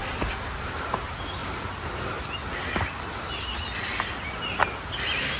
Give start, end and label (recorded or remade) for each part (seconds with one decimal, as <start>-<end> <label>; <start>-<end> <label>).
0.0-1.4 recorded; 1.4-1.9 remade; 1.9-5.4 recorded